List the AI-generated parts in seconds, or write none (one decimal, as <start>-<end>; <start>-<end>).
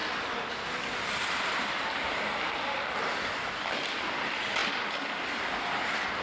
none